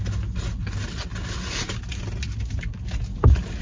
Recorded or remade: recorded